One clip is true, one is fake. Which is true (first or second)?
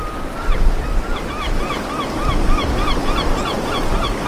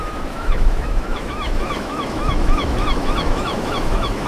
first